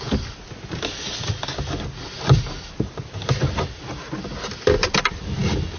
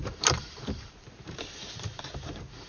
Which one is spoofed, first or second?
second